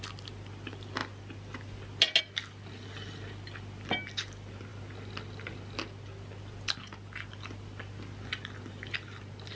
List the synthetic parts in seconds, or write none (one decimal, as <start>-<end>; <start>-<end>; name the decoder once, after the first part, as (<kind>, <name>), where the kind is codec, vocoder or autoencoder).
none